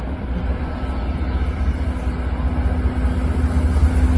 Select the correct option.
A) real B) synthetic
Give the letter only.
A